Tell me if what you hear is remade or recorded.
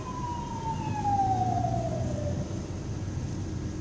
recorded